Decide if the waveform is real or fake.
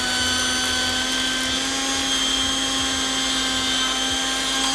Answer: real